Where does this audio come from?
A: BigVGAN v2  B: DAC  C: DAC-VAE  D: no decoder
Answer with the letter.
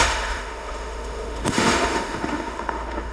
C